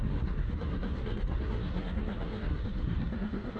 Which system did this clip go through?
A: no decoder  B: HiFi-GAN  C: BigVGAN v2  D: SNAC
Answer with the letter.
D